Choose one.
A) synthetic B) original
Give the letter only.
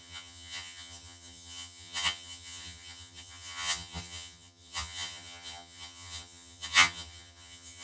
A